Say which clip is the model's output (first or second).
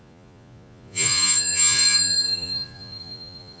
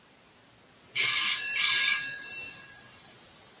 first